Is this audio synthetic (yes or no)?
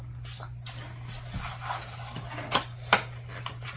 no